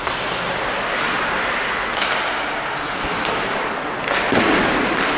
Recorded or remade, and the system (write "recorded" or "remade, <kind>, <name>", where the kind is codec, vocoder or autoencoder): recorded